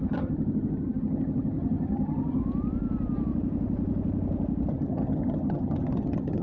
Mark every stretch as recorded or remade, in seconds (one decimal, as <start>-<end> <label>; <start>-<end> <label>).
0.0-2.4 remade; 2.4-4.7 recorded; 4.7-6.4 remade